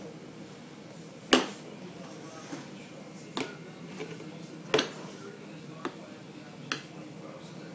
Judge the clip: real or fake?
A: real